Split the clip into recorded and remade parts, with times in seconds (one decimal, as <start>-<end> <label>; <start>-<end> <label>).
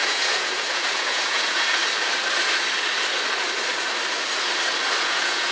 0.0-1.8 remade; 1.8-5.0 recorded; 5.0-5.5 remade